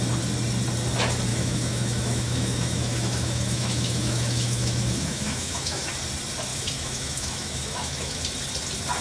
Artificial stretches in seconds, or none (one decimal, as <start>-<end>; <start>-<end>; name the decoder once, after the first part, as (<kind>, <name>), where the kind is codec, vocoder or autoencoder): 1.3-5.9 (autoencoder, DAC-VAE); 6.5-8.2